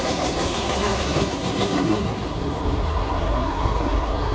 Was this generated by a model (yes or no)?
yes